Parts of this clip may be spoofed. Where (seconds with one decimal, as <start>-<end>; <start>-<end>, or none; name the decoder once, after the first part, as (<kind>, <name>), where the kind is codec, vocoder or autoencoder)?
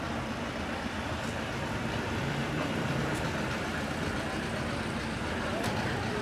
0.0-2.4 (vocoder, BigVGAN v2); 4.0-6.2